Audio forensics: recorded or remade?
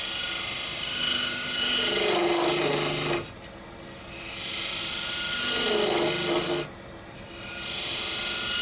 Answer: recorded